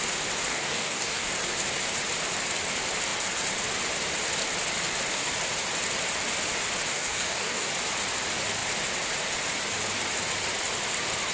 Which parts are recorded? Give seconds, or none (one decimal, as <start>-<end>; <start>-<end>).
0.0-0.5; 1.3-6.9; 7.7-11.3